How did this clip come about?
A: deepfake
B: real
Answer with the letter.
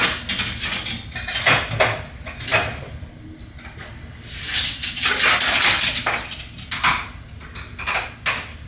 B